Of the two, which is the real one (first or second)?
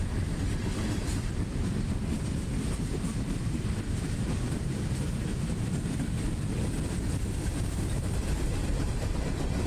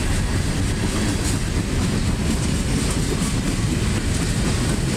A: second